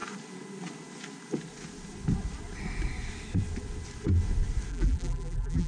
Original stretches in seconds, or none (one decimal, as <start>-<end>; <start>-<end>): 0.0-4.7